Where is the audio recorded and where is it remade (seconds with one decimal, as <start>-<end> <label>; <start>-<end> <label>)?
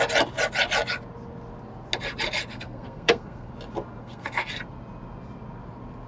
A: 0.0-2.5 recorded; 2.5-3.5 remade; 3.5-4.0 recorded; 4.0-4.5 remade; 4.5-6.1 recorded